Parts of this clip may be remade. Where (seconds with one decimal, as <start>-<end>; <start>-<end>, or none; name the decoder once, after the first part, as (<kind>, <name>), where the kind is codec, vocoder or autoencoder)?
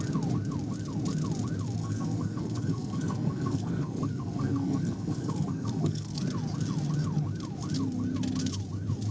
1.8-6.2 (codec, SNAC)